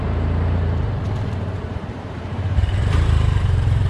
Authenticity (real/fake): fake